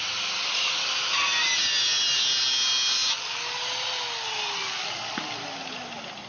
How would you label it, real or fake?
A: real